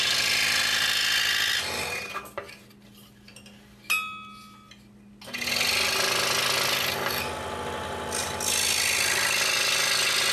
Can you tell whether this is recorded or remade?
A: recorded